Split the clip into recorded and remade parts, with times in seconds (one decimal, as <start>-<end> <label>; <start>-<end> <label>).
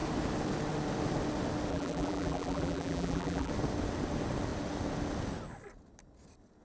0.0-1.7 recorded; 1.7-3.5 remade; 3.5-6.6 recorded